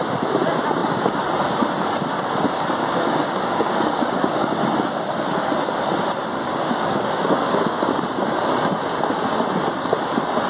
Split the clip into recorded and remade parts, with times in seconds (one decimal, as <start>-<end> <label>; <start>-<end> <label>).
0.0-2.8 recorded; 2.8-4.6 remade; 4.6-6.4 recorded; 6.4-8.0 remade; 8.0-10.5 recorded